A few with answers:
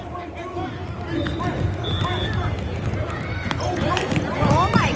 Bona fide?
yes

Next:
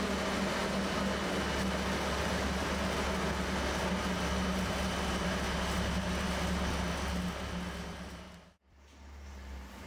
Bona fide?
yes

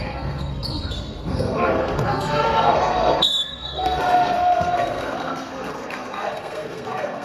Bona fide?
no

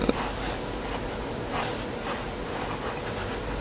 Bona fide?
yes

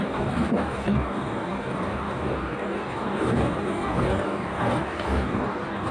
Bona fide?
no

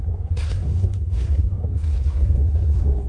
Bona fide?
no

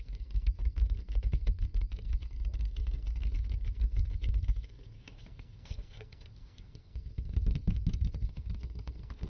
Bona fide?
no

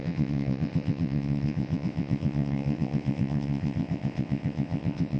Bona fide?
no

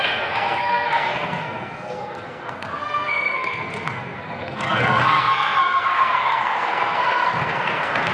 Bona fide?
no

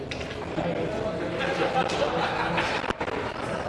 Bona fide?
yes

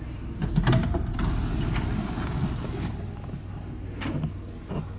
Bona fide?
yes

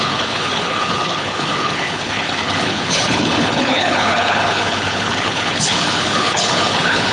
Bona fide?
no